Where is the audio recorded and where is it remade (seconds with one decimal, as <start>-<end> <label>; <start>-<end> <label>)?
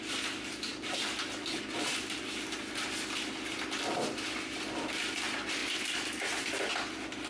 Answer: 0.0-7.3 recorded